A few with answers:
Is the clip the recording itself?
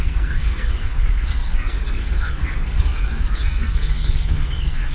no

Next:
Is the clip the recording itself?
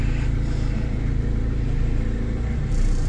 no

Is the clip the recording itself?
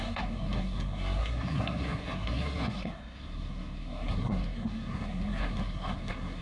no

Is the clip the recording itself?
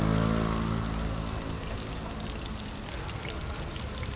yes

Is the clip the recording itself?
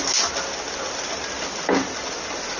yes